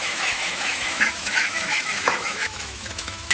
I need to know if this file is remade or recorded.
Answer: remade